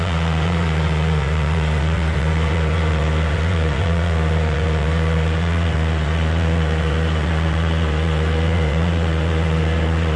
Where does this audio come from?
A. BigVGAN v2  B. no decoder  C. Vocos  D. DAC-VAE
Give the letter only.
C